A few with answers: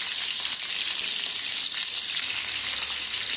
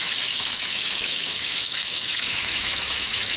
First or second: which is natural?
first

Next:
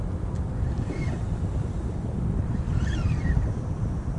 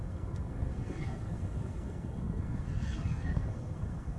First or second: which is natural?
first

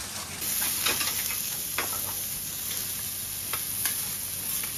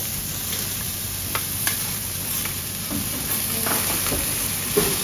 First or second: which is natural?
first